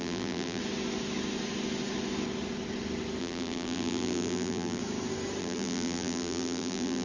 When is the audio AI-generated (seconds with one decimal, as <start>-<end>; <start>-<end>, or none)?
0.0-0.6; 3.2-4.8; 5.4-7.0